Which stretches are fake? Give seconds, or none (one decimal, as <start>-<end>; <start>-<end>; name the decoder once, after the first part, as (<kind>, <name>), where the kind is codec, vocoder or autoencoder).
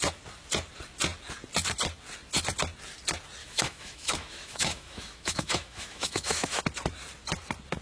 3.4-6.6 (autoencoder, DAC-VAE)